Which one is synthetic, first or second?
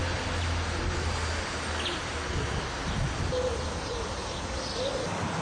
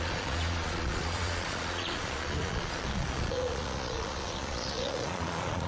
second